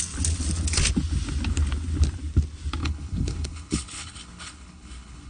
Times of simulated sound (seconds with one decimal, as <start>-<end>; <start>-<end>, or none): 2.8-5.3